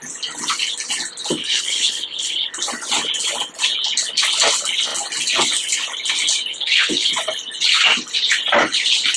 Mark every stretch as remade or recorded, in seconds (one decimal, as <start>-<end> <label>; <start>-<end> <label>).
0.0-1.4 recorded; 1.4-2.5 remade; 2.5-6.5 recorded; 6.5-7.1 remade; 7.1-9.2 recorded